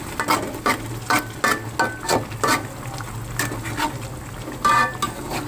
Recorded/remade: recorded